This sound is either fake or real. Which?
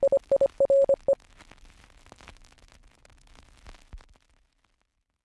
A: real